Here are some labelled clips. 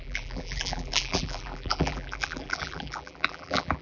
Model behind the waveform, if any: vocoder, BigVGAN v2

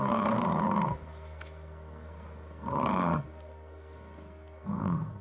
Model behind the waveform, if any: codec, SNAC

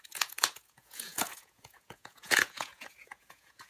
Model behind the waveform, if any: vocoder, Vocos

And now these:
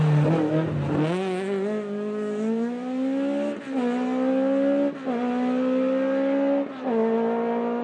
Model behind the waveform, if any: none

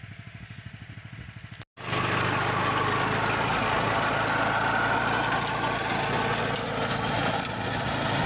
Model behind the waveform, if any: none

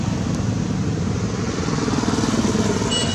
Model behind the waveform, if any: none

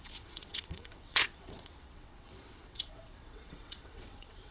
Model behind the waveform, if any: vocoder, WaveNeXt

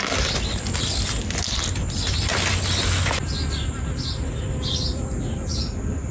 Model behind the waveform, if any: none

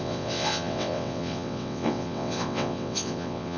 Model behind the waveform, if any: vocoder, WaveNeXt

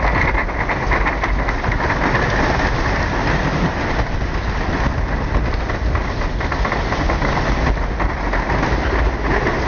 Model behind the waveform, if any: none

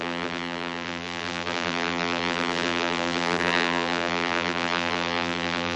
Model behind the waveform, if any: vocoder, BigVGAN v2